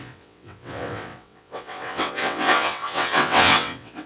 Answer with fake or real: fake